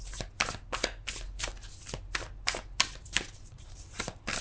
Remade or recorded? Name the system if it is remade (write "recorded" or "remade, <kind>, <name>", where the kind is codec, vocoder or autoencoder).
recorded